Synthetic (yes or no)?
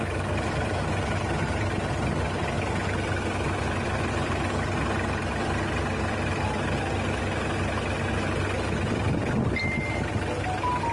no